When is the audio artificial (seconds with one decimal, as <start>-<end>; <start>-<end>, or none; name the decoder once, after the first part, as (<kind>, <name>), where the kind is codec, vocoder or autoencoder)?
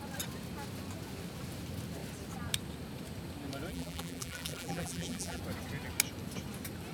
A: 3.7-5.4 (vocoder, BigVGAN v2)